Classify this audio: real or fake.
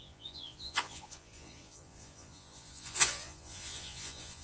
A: fake